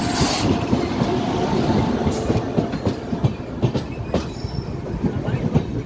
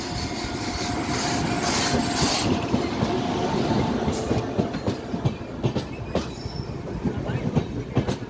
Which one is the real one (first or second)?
second